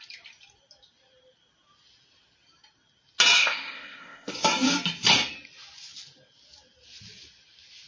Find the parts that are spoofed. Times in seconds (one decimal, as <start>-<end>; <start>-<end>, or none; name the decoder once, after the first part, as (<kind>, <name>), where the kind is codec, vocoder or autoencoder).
3.4-4.3 (codec, ZipCodec)